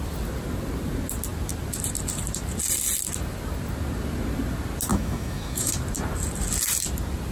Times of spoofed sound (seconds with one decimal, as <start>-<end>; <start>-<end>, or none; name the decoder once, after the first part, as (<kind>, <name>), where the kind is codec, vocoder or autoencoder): 4.9-5.7 (autoencoder, DAC-VAE)